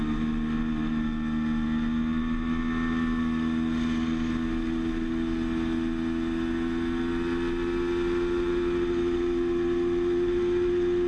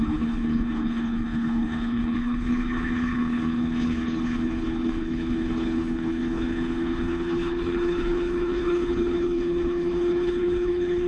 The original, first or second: first